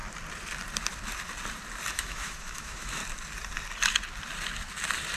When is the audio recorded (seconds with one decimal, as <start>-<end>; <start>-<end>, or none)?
0.0-1.9; 3.0-5.2